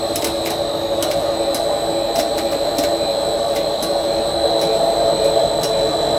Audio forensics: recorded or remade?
recorded